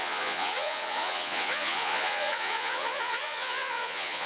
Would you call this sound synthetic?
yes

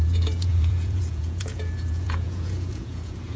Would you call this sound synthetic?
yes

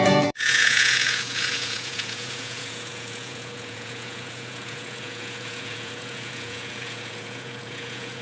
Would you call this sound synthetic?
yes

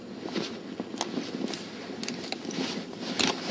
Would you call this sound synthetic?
no